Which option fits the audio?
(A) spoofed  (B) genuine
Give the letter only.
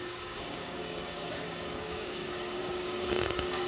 A